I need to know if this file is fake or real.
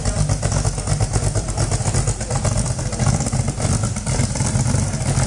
fake